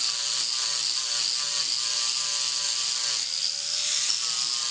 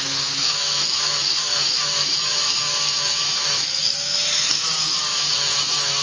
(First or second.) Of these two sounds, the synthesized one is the second